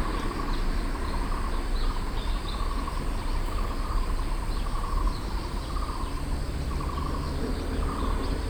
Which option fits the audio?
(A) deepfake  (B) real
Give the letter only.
B